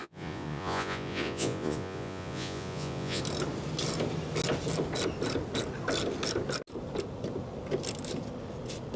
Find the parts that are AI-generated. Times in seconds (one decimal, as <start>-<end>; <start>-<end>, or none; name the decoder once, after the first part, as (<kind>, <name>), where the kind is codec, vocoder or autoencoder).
0.0-3.2 (vocoder, Vocos)